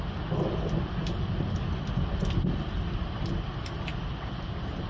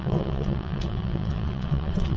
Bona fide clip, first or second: first